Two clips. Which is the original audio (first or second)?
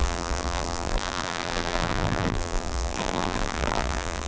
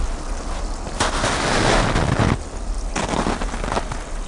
second